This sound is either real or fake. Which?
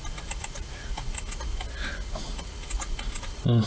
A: real